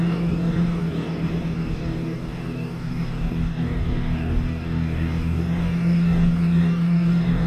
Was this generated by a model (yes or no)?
yes